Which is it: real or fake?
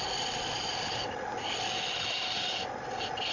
real